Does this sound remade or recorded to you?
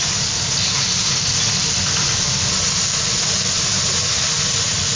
recorded